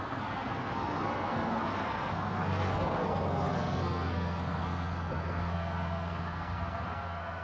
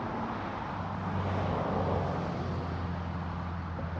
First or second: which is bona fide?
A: second